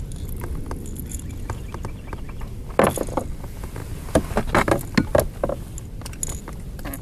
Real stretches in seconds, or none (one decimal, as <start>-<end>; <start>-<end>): 0.0-7.0